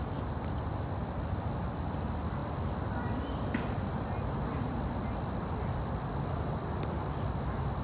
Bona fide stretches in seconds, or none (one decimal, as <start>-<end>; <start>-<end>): 0.0-7.8